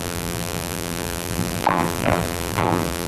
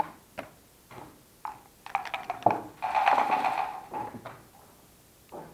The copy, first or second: first